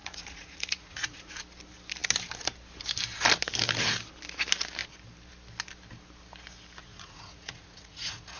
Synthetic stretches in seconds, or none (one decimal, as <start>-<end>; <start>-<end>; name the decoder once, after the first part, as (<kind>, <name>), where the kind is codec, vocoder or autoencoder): 0.0-1.3 (vocoder, Vocos); 6.9-8.4